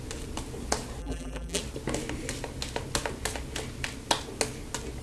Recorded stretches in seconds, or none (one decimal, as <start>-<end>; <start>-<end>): 0.0-1.0; 1.6-5.0